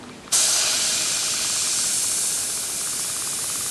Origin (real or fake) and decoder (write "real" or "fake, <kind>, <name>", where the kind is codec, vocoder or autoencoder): real